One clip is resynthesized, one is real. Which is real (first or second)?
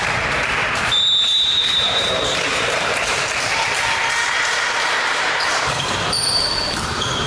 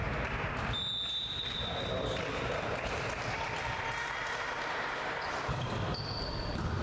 second